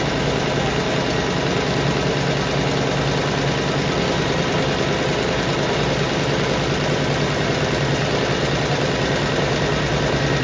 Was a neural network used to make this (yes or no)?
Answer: no